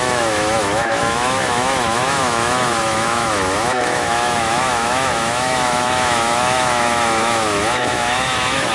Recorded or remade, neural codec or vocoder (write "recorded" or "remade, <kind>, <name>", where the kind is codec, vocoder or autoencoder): remade, autoencoder, DAC-VAE